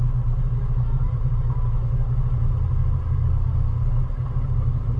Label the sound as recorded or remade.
recorded